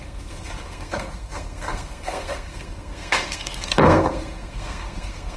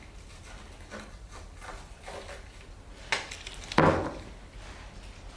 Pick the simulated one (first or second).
first